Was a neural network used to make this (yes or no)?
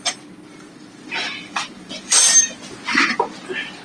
yes